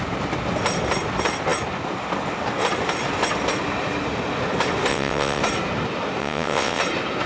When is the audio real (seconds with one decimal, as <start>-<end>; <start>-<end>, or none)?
0.0-4.9; 5.4-6.2; 6.8-7.3